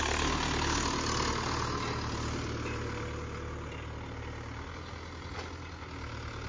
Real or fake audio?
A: real